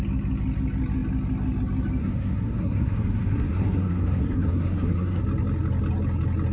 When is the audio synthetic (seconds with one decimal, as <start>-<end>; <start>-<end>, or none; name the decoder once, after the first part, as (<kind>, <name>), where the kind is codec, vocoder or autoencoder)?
2.0-5.2 (codec, SNAC)

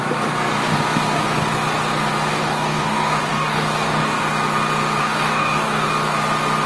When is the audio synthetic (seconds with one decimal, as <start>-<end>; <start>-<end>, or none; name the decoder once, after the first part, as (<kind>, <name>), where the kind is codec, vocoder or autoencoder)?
2.3-4.3 (codec, DAC); 5.0-5.9